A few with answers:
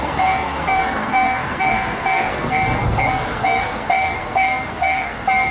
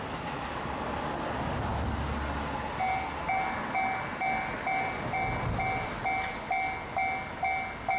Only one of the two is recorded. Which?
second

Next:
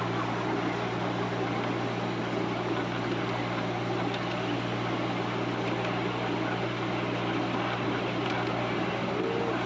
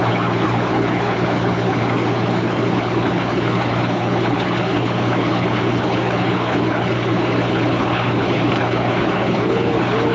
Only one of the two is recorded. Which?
first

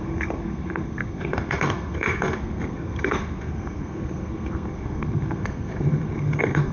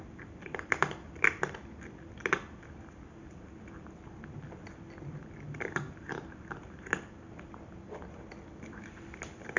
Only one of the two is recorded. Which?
second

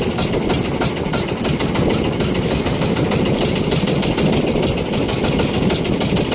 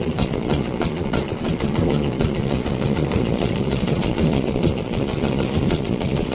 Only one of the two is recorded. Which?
first